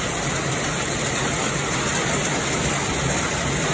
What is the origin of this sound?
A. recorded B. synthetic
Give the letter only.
A